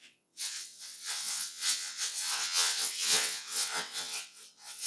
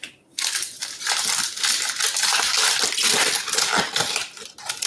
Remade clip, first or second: first